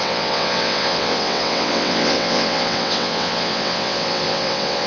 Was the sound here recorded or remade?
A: remade